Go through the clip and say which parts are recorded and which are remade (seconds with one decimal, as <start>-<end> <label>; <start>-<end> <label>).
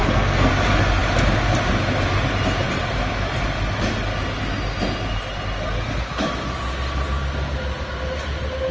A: 0.0-0.5 remade; 0.5-8.7 recorded